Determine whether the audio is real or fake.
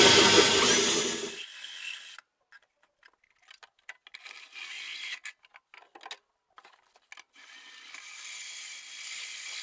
real